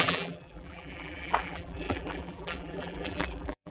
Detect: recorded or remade remade